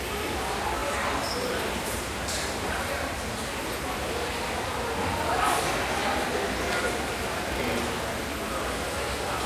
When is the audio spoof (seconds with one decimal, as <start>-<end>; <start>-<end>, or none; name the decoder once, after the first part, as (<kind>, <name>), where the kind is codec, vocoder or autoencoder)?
0.8-3.6 (vocoder, BigVGAN v2)

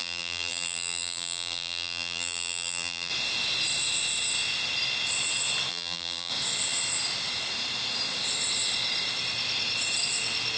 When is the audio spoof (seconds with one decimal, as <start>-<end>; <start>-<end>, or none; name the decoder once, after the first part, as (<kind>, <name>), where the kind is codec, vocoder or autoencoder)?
0.0-3.1 (vocoder, BigVGAN v2); 5.7-6.3

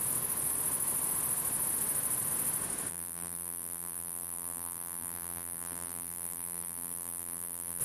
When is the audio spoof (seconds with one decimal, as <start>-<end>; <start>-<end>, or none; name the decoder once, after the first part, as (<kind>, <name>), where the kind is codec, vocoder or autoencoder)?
2.9-7.8 (vocoder, BigVGAN v2)

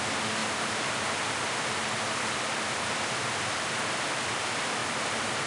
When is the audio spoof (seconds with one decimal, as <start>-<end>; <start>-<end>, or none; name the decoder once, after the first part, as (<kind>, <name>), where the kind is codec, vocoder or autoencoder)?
0.4-3.7 (vocoder, BigVGAN v2); 4.8-5.5